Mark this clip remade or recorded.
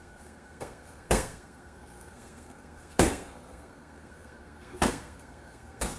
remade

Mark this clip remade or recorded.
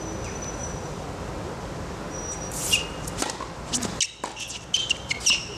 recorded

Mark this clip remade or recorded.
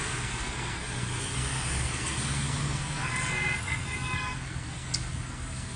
remade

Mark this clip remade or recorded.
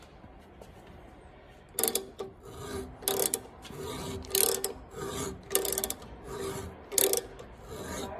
recorded